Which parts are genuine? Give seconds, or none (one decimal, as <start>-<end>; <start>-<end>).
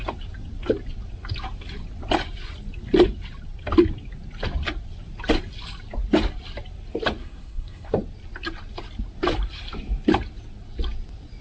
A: 0.0-7.2; 7.9-11.4